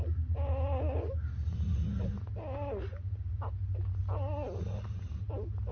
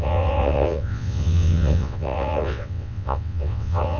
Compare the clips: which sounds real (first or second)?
first